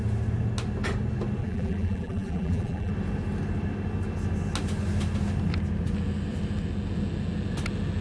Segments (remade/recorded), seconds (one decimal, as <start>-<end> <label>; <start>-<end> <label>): 0.0-1.4 recorded; 1.4-2.9 remade; 2.9-8.0 recorded